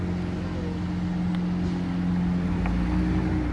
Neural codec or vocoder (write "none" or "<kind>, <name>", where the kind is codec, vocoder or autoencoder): none